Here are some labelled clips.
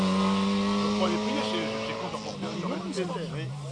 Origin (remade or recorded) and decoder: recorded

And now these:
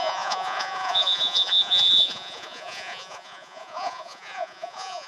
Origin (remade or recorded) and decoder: remade, vocoder, Vocos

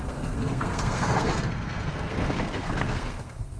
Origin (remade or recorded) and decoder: remade, codec, SNAC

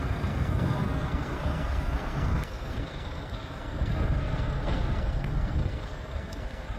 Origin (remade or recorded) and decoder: remade, codec, SNAC